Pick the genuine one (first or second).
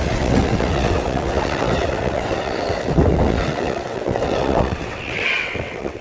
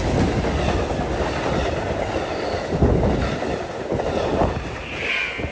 second